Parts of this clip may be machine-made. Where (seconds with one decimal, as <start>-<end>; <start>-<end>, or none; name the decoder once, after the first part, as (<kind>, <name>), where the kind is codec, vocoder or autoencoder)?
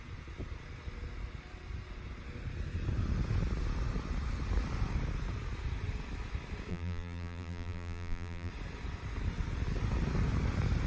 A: 6.7-8.5 (vocoder, BigVGAN v2)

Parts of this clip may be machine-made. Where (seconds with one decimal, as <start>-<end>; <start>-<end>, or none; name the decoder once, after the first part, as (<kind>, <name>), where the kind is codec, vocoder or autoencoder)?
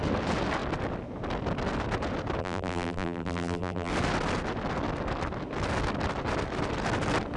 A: 2.4-3.9 (vocoder, BigVGAN v2)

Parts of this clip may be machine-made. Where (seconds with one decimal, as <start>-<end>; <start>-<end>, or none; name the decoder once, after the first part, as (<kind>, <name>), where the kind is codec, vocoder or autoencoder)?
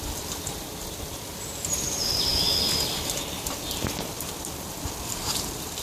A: 0.0-2.3 (vocoder, BigVGAN v2); 3.0-5.8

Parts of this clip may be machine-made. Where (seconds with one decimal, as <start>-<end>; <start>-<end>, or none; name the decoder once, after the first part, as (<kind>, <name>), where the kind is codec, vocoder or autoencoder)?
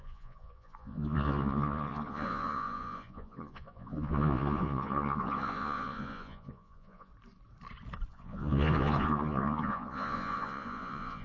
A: 0.0-7.1 (vocoder, Vocos); 8.1-11.2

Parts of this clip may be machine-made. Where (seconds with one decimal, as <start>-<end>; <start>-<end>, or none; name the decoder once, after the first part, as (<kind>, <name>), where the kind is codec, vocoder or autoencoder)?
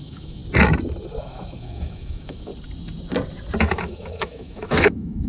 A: 0.0-0.4 (autoencoder, DAC-VAE); 1.2-2.5; 3.6-5.3